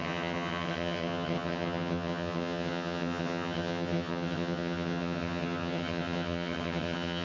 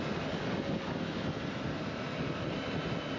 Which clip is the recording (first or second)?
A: second